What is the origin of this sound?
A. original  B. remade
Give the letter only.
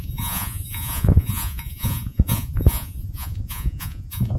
B